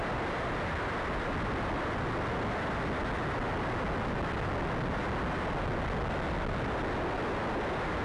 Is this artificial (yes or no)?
no